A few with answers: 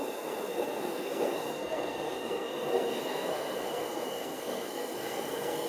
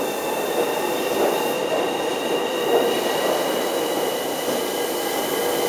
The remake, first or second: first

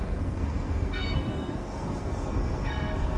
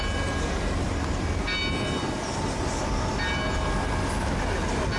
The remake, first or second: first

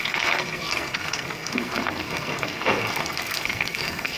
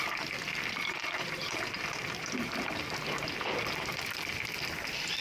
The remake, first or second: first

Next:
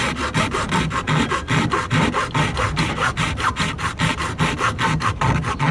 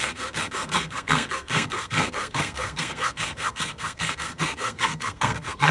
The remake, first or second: second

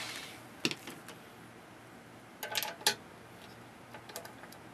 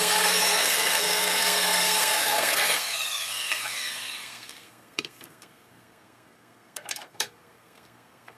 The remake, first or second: second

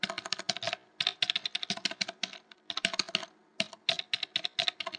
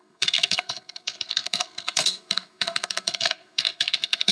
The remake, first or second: second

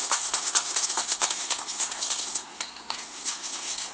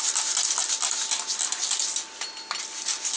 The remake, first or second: first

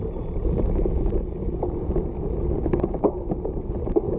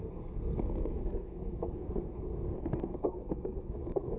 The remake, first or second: second